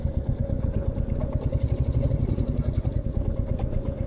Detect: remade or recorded recorded